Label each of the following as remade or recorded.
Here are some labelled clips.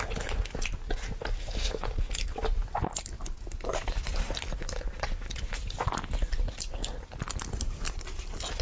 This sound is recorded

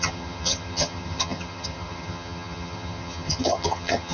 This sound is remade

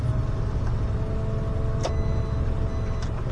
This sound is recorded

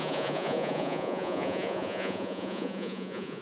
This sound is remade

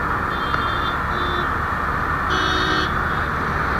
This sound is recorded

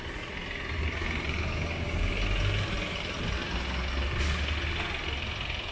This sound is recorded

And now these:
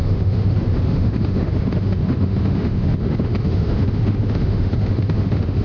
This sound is remade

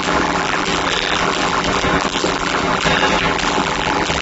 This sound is remade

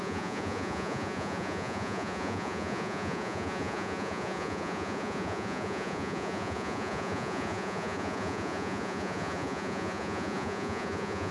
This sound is remade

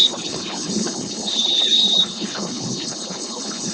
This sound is remade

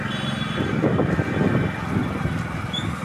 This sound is recorded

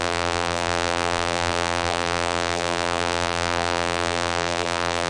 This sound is remade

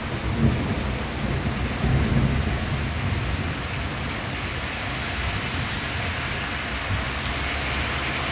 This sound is recorded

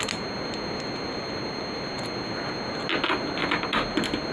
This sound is recorded